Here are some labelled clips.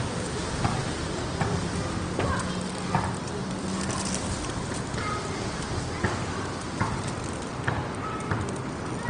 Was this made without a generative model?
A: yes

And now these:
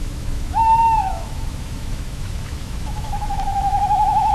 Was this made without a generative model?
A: no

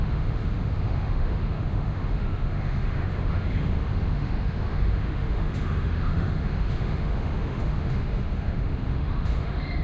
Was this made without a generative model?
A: no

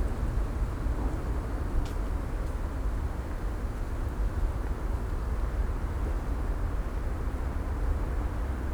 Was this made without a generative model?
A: yes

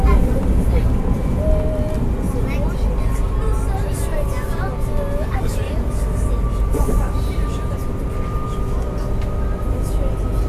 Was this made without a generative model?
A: yes